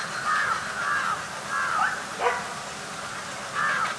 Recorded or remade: recorded